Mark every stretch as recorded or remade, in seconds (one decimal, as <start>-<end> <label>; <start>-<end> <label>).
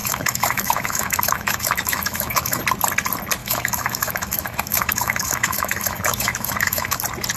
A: 0.0-2.6 remade; 2.6-3.4 recorded; 3.4-7.0 remade; 7.0-7.4 recorded